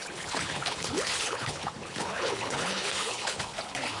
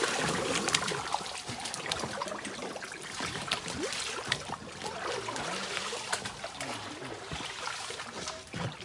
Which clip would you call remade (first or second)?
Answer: first